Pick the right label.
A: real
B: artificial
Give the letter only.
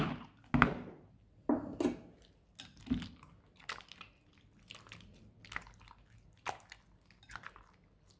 A